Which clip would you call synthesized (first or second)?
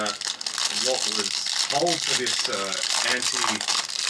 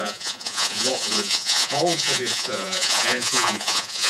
second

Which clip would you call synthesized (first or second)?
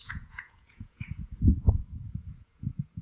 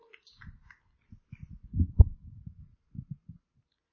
first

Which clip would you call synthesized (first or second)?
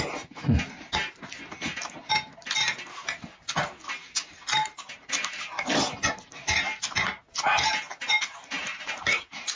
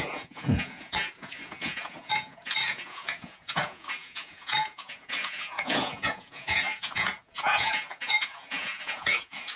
second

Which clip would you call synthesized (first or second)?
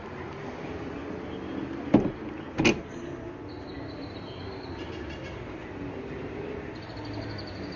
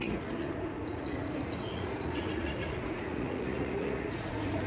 second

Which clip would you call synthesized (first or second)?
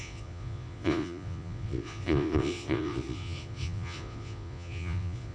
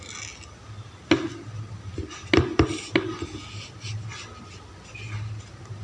first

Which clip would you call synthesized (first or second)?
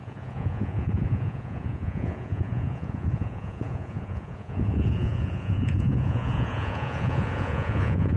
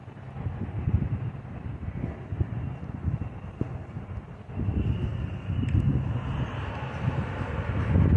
first